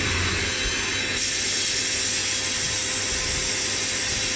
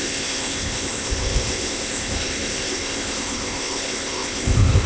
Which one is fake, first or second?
second